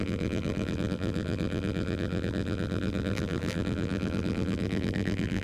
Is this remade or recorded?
remade